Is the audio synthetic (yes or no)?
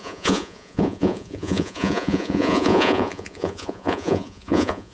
yes